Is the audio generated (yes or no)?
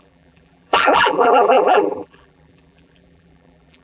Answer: yes